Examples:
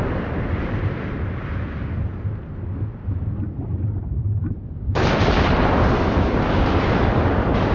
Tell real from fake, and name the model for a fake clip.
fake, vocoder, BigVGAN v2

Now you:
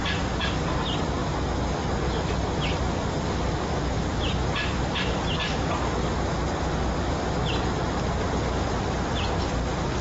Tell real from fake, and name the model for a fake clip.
fake, vocoder, BigVGAN v2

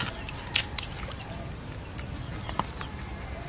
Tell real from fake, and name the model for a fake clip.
real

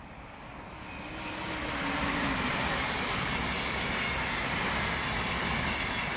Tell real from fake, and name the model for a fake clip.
real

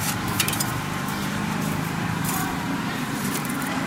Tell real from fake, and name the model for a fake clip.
fake, vocoder, BigVGAN v2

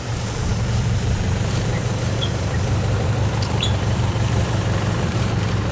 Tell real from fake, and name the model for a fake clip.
fake, vocoder, BigVGAN v2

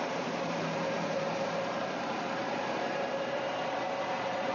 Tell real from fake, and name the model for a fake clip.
fake, vocoder, BigVGAN v2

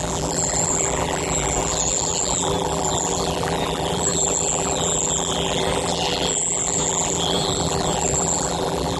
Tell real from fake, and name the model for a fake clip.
fake, vocoder, BigVGAN v2